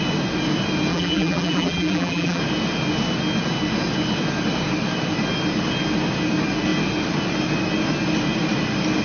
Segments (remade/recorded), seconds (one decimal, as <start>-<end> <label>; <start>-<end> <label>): 0.0-0.9 recorded; 0.9-2.4 remade; 2.4-9.0 recorded